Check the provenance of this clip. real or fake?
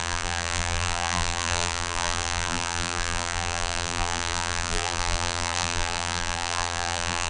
fake